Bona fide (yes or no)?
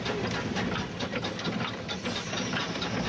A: yes